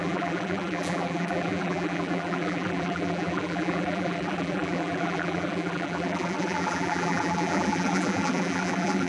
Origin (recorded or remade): remade